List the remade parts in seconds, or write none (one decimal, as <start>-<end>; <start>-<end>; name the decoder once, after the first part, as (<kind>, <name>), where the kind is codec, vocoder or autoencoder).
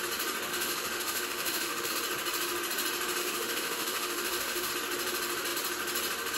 0.5-1.9 (autoencoder, DAC-VAE); 3.2-4.7